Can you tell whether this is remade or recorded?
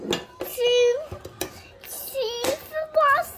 recorded